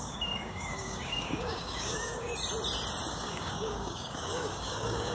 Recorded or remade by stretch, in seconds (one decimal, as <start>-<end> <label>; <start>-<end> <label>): 0.0-2.3 remade; 2.3-3.1 recorded; 3.1-5.1 remade